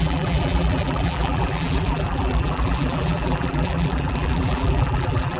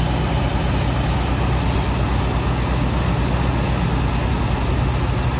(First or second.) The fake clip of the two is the first